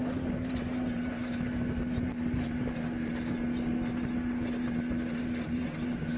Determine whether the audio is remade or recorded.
recorded